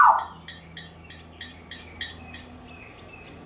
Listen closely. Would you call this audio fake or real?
real